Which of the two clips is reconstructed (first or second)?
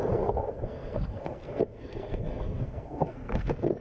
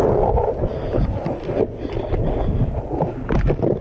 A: first